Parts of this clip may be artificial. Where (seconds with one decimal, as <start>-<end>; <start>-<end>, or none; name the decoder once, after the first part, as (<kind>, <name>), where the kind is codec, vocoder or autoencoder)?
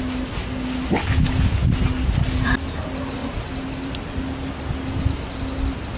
none